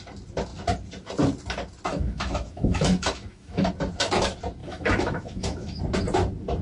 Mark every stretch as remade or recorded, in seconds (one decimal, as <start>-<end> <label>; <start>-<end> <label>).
0.0-1.9 recorded; 1.9-3.7 remade; 3.7-4.6 recorded; 4.6-5.8 remade; 5.8-6.6 recorded

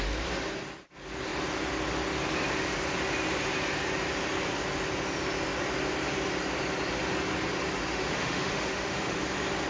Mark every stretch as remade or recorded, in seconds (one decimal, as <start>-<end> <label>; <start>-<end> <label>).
0.0-7.9 recorded; 7.9-9.2 remade; 9.2-9.7 recorded

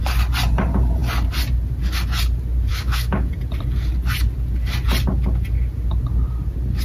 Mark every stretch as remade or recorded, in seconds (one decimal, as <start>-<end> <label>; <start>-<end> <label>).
0.0-2.7 recorded; 2.7-3.3 remade; 3.3-6.8 recorded

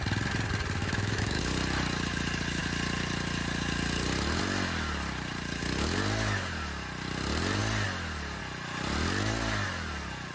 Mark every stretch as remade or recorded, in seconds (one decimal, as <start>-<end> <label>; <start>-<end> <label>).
0.0-0.8 recorded; 0.8-1.4 remade; 1.4-10.3 recorded